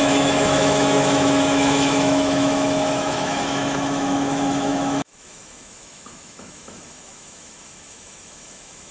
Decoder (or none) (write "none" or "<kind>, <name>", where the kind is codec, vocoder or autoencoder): autoencoder, DAC-VAE